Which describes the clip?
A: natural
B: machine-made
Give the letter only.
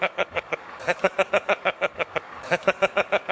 B